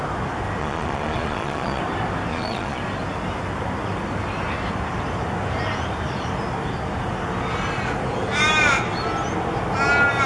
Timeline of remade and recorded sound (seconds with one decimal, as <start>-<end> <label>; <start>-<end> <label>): 0.0-0.6 recorded; 0.6-1.8 remade; 1.8-2.3 recorded; 2.3-2.8 remade; 2.8-10.3 recorded